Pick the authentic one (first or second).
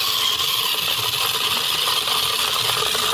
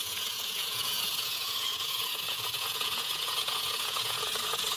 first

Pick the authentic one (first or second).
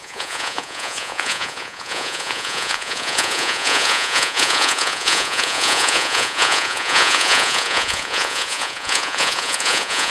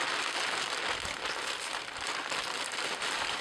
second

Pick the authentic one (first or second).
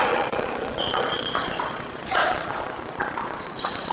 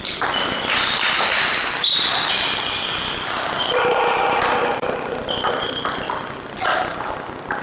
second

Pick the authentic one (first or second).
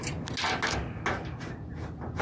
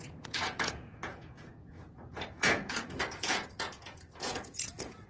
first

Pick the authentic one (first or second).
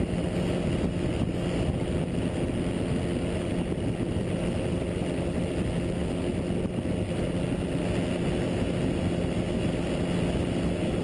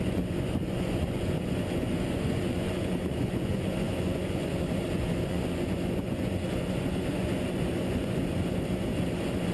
first